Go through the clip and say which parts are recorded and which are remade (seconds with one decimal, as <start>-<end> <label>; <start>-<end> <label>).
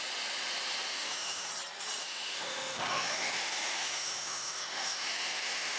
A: 0.0-0.9 recorded; 0.9-1.5 remade; 1.5-2.0 recorded; 2.0-5.8 remade